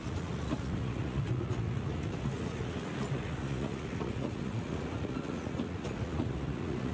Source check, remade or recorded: remade